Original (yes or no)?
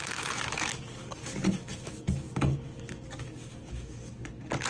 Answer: no